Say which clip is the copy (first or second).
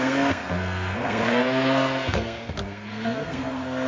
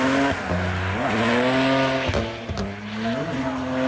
first